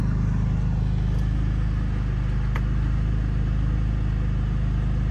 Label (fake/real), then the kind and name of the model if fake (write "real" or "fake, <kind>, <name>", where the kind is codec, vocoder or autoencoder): real